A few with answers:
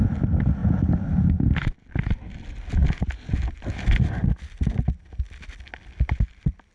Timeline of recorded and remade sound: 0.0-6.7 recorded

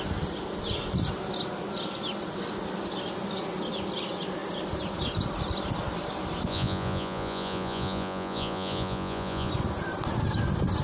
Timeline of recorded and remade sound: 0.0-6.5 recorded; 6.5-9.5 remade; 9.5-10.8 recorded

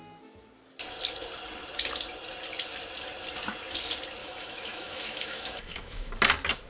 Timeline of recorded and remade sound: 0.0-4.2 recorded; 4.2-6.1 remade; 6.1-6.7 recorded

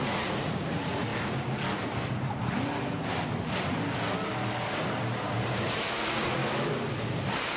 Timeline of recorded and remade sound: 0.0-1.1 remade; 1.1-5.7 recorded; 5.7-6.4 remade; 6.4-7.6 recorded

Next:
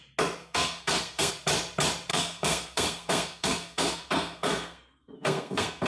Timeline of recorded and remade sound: 0.0-0.4 recorded; 0.4-1.3 remade; 1.3-2.1 recorded; 2.1-5.9 remade